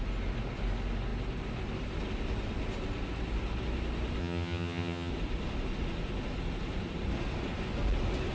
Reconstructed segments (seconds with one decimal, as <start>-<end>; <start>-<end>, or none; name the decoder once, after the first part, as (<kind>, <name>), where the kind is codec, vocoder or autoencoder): 4.2-5.1 (vocoder, HiFi-GAN)